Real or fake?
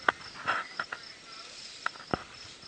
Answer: real